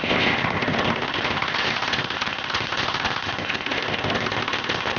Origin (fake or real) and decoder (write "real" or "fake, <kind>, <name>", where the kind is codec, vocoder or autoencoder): fake, codec, ZipCodec